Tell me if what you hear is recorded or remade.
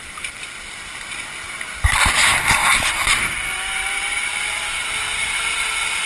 recorded